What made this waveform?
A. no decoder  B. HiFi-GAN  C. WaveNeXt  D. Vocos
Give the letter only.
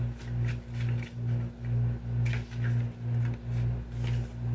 A